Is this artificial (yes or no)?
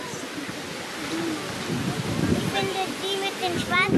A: no